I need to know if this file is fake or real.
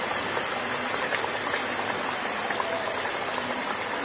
fake